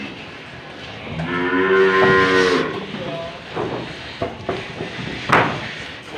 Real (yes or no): yes